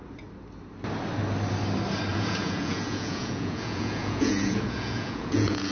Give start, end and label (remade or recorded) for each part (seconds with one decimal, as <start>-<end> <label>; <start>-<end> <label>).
0.0-2.1 recorded; 2.1-5.7 remade